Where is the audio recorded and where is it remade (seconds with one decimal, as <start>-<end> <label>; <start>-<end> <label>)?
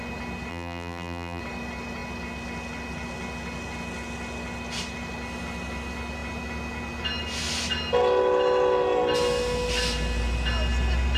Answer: 0.0-0.5 recorded; 0.5-1.4 remade; 1.4-11.2 recorded